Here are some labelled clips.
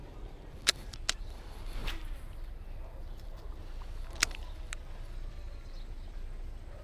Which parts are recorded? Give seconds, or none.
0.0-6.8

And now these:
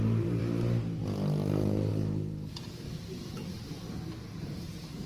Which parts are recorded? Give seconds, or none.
0.4-1.5

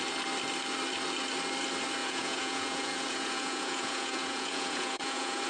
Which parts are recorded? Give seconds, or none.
0.0-2.0

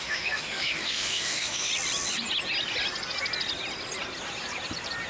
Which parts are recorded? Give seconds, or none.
1.7-5.1

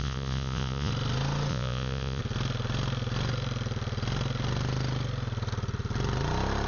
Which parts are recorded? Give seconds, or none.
0.9-1.5; 2.2-6.7

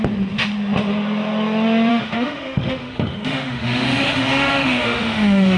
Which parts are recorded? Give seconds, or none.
0.0-1.9